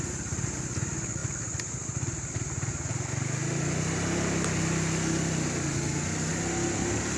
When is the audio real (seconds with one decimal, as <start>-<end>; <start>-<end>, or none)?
0.0-7.2